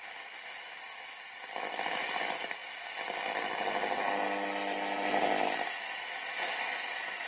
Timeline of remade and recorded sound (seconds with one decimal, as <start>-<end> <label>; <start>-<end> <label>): 0.0-7.3 recorded